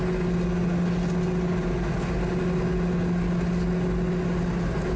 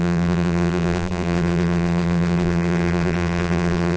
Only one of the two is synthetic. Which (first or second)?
second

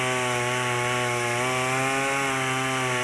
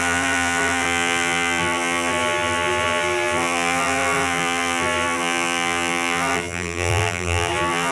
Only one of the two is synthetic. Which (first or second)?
second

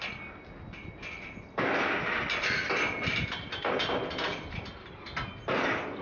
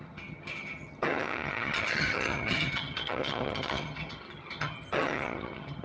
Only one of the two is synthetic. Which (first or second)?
second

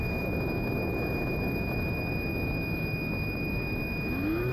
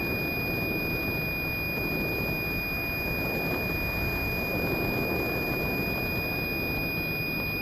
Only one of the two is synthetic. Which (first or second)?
first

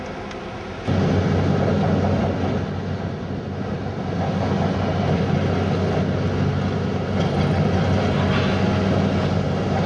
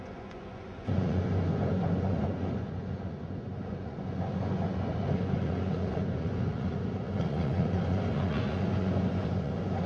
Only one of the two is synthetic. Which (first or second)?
second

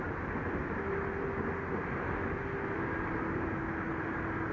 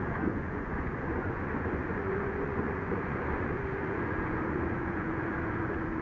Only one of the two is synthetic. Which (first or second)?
second